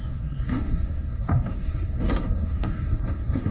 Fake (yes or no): yes